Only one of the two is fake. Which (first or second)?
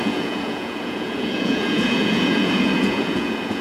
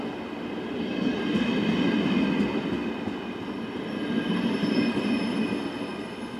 first